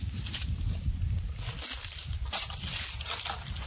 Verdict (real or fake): real